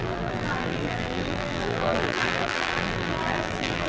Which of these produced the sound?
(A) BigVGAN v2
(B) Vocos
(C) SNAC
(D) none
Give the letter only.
A